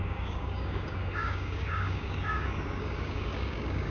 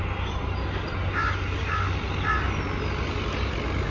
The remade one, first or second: first